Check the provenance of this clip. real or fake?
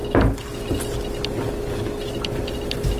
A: real